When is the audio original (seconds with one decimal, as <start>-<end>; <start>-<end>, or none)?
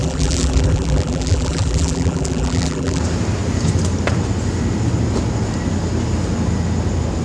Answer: 3.0-7.2